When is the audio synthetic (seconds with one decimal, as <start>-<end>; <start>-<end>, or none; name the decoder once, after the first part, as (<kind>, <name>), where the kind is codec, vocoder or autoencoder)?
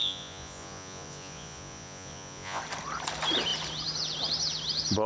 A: 0.0-2.6 (vocoder, Vocos)